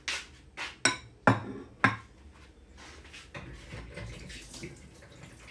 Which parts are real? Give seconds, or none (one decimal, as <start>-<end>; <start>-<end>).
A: 0.0-5.5

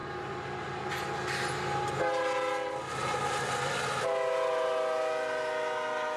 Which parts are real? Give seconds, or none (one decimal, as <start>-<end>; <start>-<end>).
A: 0.0-6.2

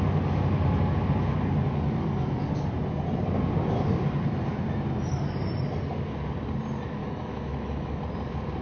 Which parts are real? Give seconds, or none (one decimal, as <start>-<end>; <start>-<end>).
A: 0.0-7.0; 8.0-8.6